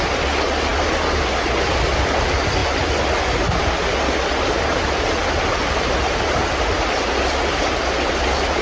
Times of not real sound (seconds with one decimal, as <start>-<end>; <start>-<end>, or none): none

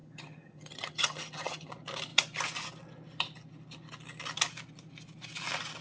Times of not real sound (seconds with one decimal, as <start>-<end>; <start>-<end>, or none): 0.0-1.7

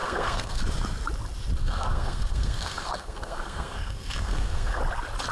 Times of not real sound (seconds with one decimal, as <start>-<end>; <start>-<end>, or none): 0.0-0.6; 1.6-4.8

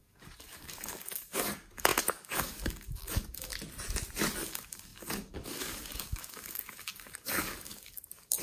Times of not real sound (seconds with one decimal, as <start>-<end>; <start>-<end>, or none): 0.0-3.5; 4.4-8.4